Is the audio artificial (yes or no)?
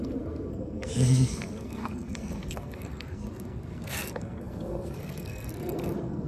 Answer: yes